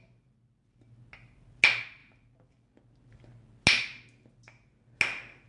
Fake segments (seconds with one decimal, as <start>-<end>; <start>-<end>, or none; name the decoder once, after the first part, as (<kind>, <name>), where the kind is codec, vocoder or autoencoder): none